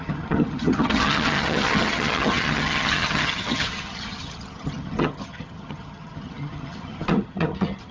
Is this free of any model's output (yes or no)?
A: no